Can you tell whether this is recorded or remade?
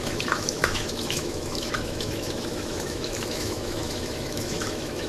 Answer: remade